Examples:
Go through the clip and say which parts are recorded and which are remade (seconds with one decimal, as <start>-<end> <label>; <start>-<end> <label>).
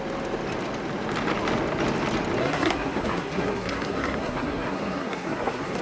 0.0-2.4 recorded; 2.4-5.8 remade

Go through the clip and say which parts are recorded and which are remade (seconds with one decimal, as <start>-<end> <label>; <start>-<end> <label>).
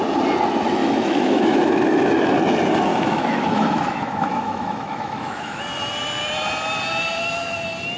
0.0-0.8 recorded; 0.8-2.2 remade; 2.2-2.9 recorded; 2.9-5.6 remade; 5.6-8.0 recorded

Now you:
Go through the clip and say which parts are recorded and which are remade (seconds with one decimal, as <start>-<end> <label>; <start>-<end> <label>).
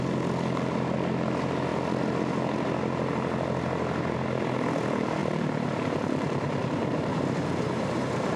0.0-5.2 recorded; 5.2-8.4 remade